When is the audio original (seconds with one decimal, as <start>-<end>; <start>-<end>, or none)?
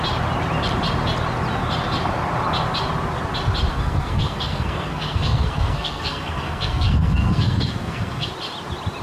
0.0-3.7; 8.3-9.0